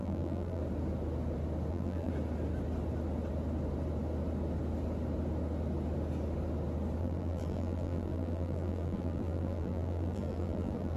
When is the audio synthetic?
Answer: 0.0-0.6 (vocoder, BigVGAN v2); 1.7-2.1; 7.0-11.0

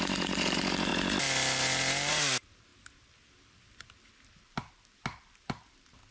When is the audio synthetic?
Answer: 0.0-0.9 (vocoder, BigVGAN v2); 2.1-2.7; 5.4-6.1

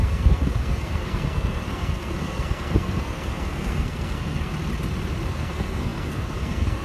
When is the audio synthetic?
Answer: 0.0-4.5 (codec, SNAC); 5.3-6.8

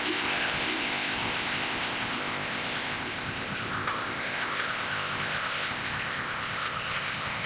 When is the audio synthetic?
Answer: 0.0-7.5 (codec, ZipCodec)

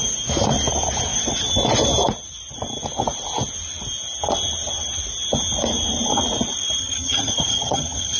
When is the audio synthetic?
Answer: 6.8-8.2 (vocoder, HiFi-GAN)